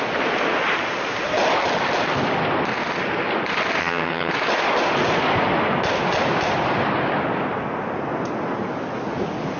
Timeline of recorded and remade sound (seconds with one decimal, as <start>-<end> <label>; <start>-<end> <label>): 0.0-3.8 recorded; 3.8-4.3 remade; 4.3-9.6 recorded